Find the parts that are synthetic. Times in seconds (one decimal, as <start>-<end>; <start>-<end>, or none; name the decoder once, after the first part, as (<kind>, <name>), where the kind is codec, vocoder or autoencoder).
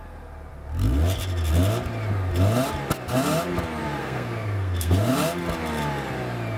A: 4.0-5.1 (codec, SNAC)